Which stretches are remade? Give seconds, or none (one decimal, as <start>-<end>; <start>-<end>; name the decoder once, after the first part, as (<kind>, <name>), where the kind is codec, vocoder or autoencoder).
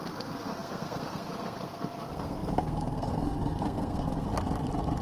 0.0-4.3 (codec, SNAC)